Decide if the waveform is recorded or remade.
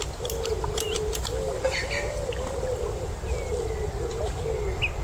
recorded